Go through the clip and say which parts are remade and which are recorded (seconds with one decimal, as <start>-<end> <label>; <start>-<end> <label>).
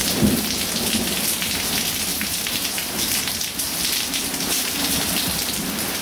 0.0-2.1 recorded; 2.1-5.0 remade; 5.0-6.0 recorded